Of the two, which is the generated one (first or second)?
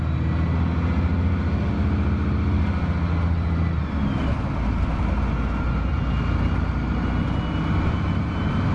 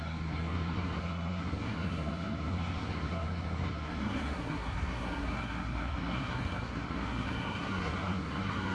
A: second